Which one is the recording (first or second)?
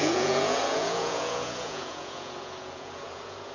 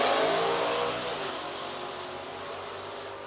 second